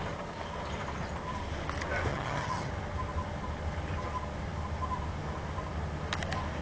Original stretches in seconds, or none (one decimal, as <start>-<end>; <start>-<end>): 0.0-2.1; 2.7-6.6

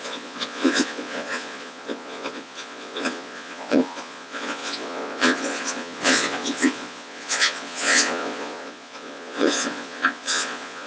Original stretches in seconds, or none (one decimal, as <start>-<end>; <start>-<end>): none

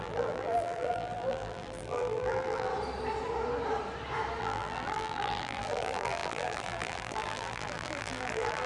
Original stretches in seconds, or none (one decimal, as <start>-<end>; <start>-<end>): 2.7-4.4

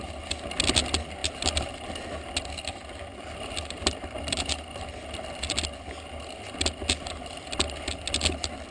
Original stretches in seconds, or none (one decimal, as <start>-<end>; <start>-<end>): 0.0-8.7